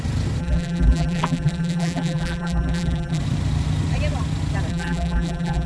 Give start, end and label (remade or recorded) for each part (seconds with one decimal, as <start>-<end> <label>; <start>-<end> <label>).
0.0-0.4 recorded; 0.4-3.2 remade; 3.2-4.7 recorded; 4.7-5.7 remade